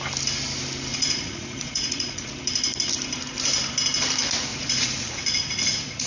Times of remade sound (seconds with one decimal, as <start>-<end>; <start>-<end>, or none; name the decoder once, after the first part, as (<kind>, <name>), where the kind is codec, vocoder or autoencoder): 0.9-2.3 (vocoder, Vocos); 4.5-6.1